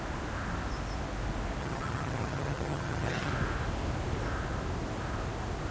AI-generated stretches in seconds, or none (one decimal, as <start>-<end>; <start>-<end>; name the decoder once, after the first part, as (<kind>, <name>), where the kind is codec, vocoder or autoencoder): 1.6-3.3 (vocoder, HiFi-GAN)